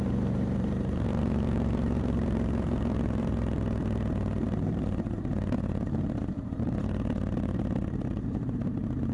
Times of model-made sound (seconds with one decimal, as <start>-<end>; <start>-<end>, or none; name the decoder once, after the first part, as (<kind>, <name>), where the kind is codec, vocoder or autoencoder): 0.0-9.1 (vocoder, BigVGAN v2)